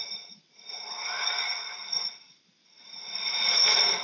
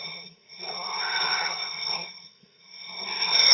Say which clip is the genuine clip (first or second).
first